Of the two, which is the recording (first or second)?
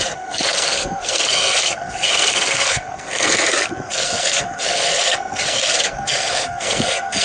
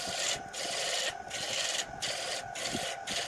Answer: second